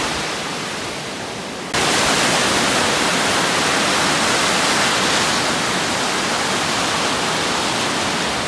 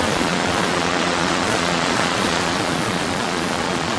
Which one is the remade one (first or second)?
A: second